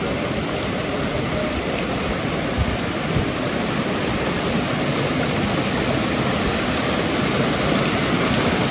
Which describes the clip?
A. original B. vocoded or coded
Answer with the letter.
A